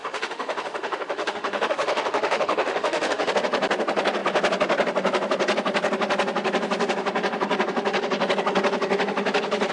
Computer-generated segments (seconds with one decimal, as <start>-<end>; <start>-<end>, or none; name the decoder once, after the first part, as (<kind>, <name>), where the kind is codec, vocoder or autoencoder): 0.0-3.3 (autoencoder, DAC-VAE)